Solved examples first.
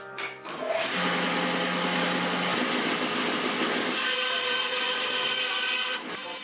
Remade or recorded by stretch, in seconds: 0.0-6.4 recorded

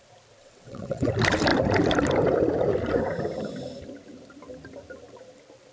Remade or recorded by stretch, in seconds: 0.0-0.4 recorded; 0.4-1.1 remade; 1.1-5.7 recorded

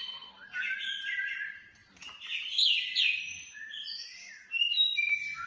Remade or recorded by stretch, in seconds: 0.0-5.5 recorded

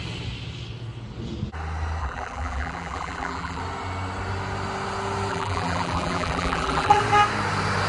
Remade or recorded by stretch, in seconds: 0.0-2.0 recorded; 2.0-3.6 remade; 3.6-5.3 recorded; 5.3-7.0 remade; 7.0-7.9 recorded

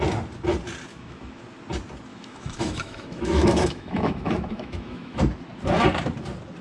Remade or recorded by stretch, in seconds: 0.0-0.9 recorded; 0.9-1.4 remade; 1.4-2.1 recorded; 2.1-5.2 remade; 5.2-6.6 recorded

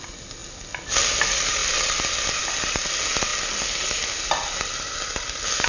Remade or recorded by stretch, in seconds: 0.0-5.7 recorded

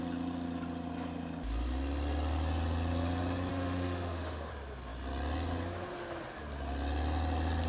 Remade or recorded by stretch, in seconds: 0.0-3.5 recorded; 3.5-4.5 remade; 4.5-7.7 recorded

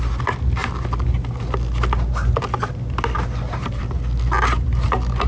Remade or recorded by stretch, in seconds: 0.0-5.3 recorded